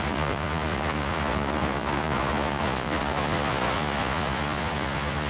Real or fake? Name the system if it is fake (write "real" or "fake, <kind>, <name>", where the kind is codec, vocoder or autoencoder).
fake, vocoder, Vocos